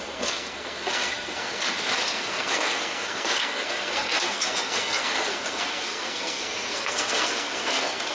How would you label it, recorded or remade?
remade